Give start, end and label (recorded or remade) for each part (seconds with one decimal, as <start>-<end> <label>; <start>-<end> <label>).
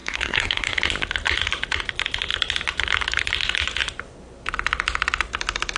0.0-0.8 remade; 0.8-5.8 recorded